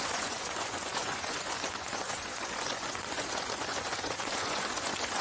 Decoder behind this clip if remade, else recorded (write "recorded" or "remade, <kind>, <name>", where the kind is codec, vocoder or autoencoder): remade, vocoder, Vocos